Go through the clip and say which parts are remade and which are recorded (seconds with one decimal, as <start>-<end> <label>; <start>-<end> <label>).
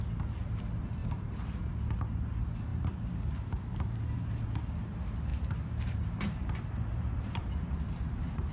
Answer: 0.0-1.0 recorded; 1.0-1.6 remade; 1.6-2.7 recorded; 2.7-4.4 remade; 4.4-5.3 recorded; 5.3-8.5 remade